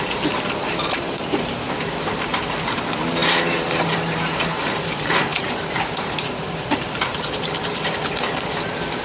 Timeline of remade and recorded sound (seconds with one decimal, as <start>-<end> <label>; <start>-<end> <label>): 0.0-9.0 remade